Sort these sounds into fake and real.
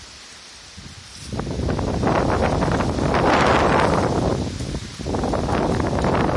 real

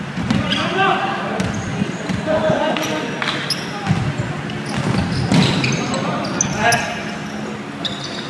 real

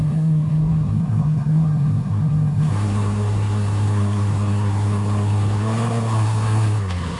fake